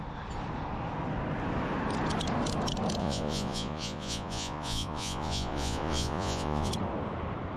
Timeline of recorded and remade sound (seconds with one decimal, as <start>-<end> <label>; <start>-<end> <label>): 0.0-3.0 recorded; 3.0-6.7 remade; 6.7-7.6 recorded

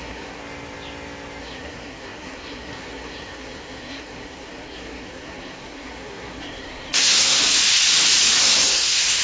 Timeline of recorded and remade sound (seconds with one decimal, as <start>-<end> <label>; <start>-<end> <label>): 0.0-0.4 remade; 0.4-1.4 recorded; 1.4-7.4 remade; 7.4-8.4 recorded; 8.4-9.2 remade